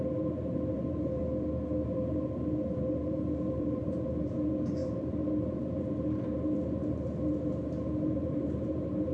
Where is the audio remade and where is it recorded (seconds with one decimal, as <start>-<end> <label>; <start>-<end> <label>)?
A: 0.0-1.2 remade; 1.2-1.8 recorded; 1.8-9.1 remade